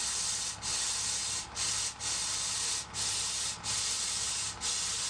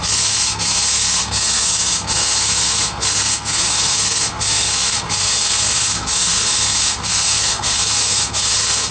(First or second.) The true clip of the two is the first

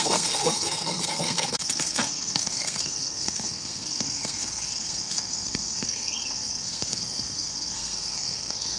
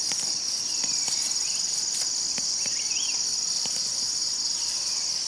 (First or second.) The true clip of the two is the second